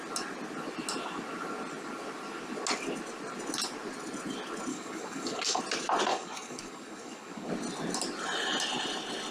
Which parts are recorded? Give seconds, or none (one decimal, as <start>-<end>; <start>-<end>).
0.0-4.7; 5.6-6.1; 7.5-9.3